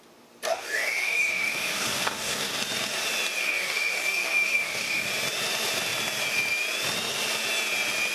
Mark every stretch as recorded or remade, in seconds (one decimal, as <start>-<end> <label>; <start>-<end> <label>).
0.0-0.5 recorded; 0.5-2.6 remade; 2.6-3.4 recorded; 3.4-5.1 remade; 5.1-8.1 recorded